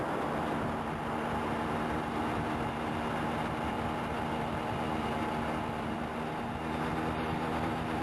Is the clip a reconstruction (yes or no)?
no